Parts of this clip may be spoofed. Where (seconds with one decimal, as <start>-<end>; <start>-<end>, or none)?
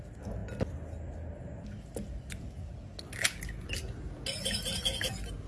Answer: none